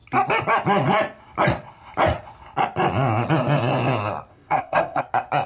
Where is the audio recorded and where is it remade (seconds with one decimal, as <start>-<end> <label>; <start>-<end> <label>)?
0.0-4.3 recorded; 4.3-5.0 remade; 5.0-5.5 recorded